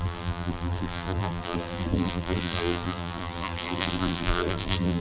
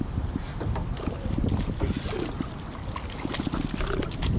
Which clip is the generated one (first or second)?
first